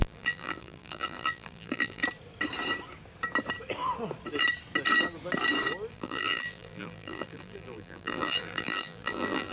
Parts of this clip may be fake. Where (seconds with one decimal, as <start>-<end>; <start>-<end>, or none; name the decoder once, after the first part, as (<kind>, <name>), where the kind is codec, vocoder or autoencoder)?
0.0-2.0 (vocoder, BigVGAN v2); 5.9-9.5